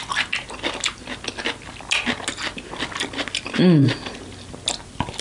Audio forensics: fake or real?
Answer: real